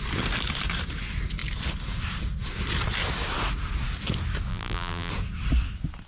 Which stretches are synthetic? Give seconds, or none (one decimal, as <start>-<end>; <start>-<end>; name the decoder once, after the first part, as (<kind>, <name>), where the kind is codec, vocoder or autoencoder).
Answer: 4.5-5.1 (vocoder, BigVGAN v2)